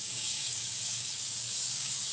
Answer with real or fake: fake